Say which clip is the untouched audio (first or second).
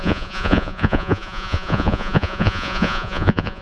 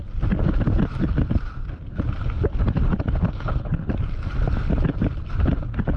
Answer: second